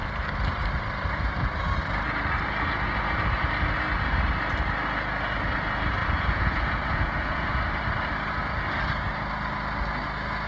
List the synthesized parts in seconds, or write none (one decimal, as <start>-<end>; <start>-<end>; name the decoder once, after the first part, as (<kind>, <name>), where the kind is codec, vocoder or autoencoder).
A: 6.0-7.5 (vocoder, Vocos)